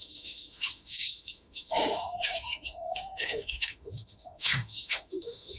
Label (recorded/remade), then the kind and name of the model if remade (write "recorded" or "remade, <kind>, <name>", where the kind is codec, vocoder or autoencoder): remade, autoencoder, DAC-VAE